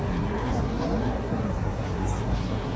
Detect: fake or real fake